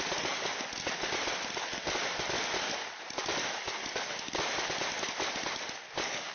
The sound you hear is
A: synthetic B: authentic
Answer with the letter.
B